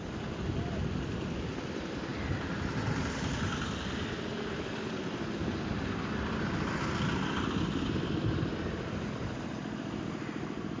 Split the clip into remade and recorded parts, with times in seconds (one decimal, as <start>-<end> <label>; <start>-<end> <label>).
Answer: 0.0-10.8 recorded